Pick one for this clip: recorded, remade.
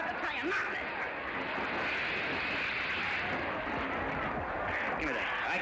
recorded